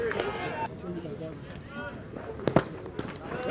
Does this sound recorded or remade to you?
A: recorded